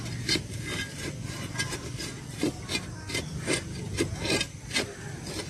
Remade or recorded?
recorded